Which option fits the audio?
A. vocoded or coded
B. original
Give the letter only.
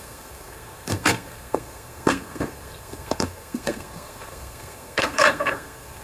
A